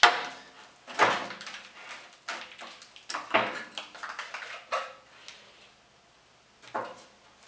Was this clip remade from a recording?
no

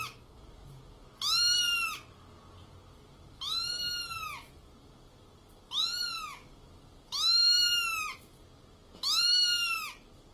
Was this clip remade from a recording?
no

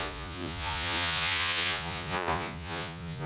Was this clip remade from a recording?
yes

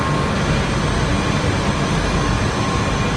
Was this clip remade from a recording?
no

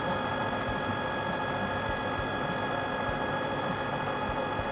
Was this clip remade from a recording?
no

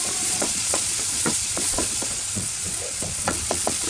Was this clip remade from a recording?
yes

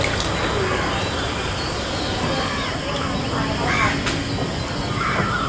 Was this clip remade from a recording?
no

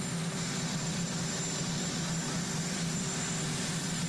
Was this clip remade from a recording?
no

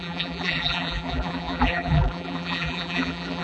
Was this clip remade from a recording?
yes